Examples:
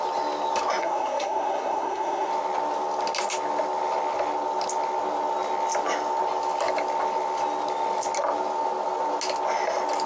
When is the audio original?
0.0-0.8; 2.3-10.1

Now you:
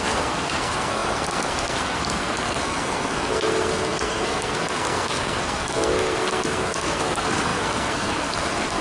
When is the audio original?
none

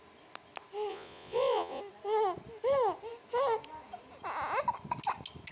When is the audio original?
0.0-0.9; 1.8-5.5